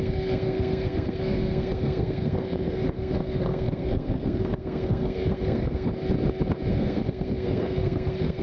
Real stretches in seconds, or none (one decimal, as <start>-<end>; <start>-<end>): 5.9-6.7